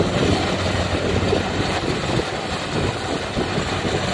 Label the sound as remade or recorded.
recorded